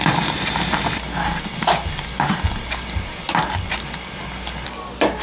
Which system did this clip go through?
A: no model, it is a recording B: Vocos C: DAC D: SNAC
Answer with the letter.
A